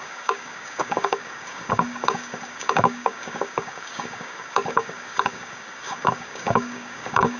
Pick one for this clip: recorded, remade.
remade